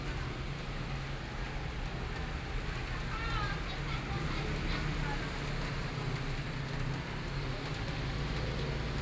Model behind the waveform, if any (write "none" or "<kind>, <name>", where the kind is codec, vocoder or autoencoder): none